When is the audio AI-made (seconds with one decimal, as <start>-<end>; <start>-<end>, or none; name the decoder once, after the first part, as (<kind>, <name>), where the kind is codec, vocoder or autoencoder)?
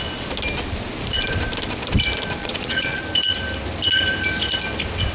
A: 2.4-3.0 (vocoder, Vocos)